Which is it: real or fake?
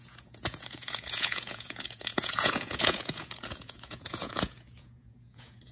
fake